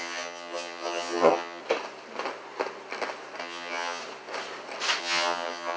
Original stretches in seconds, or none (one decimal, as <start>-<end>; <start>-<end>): 1.6-3.4; 4.0-5.0